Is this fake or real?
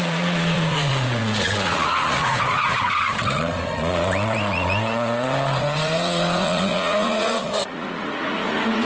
fake